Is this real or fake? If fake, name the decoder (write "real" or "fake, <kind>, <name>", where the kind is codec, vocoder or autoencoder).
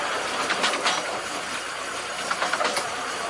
real